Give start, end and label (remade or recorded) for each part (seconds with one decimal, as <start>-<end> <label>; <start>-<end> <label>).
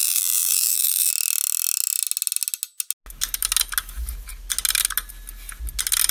0.0-1.1 remade; 1.1-6.1 recorded